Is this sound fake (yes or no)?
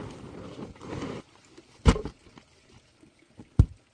no